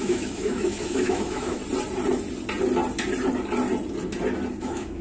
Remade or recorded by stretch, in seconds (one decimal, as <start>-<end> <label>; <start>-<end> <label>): 0.0-1.6 remade; 1.6-4.6 recorded; 4.6-5.0 remade